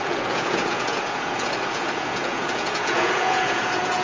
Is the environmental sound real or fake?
fake